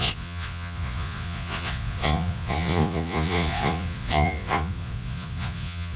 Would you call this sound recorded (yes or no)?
no